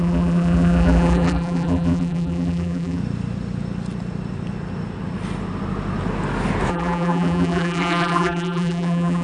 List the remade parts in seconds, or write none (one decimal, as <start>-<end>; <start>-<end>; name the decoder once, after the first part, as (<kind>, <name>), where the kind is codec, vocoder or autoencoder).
0.0-3.0 (vocoder, BigVGAN v2); 6.7-9.2